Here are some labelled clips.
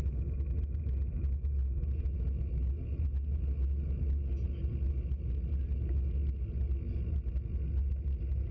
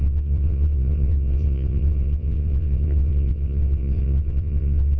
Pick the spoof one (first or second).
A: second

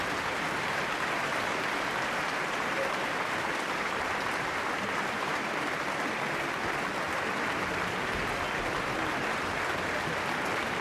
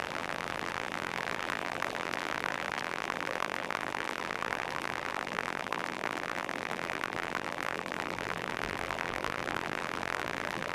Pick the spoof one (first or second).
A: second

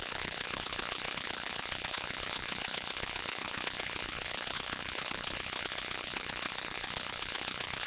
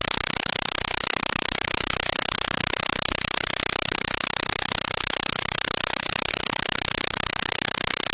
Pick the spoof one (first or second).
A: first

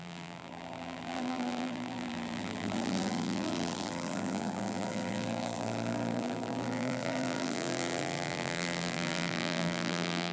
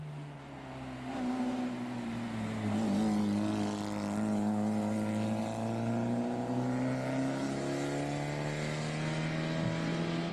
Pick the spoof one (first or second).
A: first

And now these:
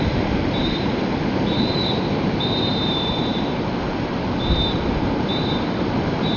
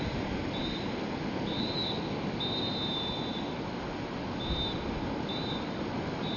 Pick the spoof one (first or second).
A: first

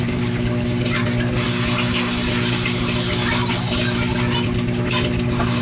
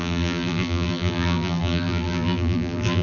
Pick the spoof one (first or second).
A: second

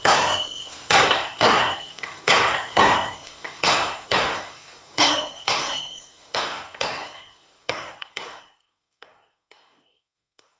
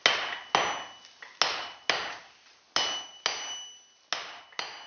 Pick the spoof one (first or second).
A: first